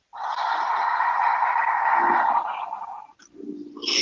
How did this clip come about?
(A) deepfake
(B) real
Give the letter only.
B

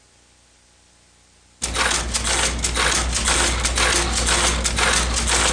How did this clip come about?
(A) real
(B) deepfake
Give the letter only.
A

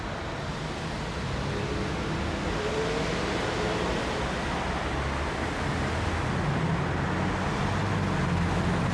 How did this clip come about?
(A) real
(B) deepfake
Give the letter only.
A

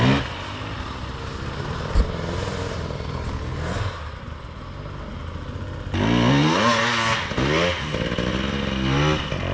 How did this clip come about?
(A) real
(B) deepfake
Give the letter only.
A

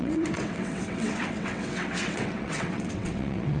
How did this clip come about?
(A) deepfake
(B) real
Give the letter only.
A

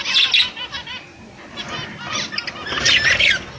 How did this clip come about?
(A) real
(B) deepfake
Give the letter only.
A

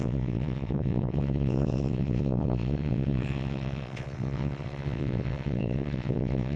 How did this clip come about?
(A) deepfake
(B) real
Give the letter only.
A